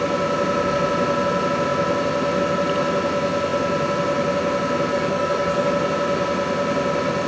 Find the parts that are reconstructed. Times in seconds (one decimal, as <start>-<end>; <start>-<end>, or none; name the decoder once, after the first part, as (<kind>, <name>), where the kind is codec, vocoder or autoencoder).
4.9-5.7 (codec, DAC)